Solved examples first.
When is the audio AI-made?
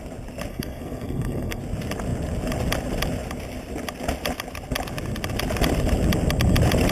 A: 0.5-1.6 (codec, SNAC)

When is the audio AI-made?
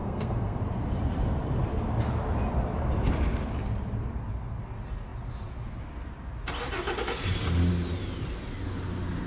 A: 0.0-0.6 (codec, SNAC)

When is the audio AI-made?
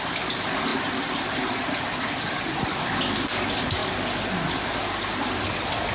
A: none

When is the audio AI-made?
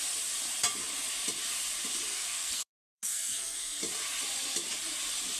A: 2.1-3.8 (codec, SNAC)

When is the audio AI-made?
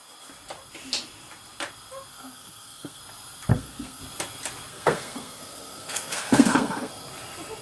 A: 2.1-3.0 (codec, SNAC); 3.5-4.0; 4.7-6.9